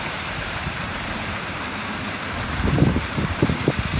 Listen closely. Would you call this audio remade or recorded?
remade